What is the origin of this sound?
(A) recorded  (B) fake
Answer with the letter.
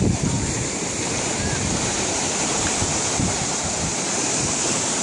B